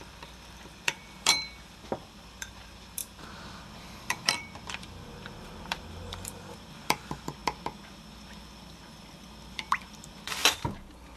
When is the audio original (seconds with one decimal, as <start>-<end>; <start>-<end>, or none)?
7.4-9.2